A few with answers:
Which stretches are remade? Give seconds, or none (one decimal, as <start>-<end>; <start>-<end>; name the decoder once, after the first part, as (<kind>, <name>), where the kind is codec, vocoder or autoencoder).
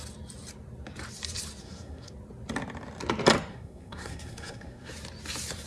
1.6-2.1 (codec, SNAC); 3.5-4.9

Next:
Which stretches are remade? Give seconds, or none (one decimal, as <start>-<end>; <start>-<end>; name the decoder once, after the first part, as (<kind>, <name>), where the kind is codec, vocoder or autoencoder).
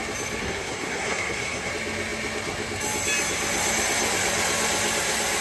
0.4-1.7 (codec, SNAC)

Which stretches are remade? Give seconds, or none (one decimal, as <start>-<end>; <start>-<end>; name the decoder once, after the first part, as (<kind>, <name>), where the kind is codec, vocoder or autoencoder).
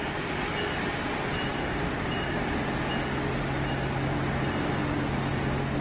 none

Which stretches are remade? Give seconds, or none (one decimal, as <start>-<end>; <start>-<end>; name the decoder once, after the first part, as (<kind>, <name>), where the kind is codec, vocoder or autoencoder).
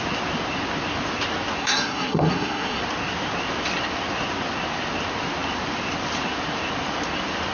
1.6-2.8 (codec, SNAC)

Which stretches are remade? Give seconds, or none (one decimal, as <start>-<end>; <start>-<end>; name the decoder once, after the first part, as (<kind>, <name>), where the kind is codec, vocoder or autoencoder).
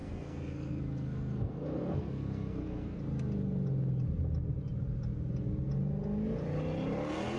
0.0-3.0 (codec, SNAC)